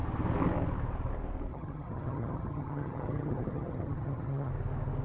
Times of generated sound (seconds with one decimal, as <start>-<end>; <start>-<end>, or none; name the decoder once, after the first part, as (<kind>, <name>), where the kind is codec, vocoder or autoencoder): 1.5-4.5 (vocoder, HiFi-GAN)

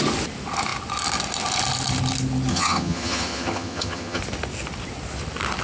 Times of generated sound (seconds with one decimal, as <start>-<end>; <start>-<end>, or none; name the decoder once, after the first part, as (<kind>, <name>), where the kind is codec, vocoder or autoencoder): 2.5-4.2 (vocoder, HiFi-GAN)

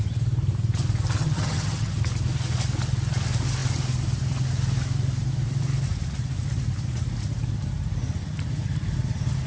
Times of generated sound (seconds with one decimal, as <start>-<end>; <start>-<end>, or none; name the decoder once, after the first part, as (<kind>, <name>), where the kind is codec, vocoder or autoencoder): 1.2-2.0 (vocoder, HiFi-GAN)

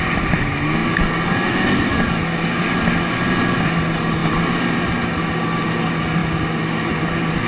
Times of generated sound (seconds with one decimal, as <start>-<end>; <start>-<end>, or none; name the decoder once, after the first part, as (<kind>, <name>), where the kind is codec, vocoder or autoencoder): none

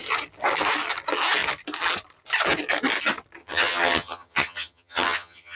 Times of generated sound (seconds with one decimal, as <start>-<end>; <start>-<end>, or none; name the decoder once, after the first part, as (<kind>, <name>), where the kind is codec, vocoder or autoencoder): 3.4-5.6 (vocoder, HiFi-GAN)